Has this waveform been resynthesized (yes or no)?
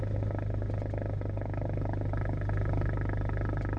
no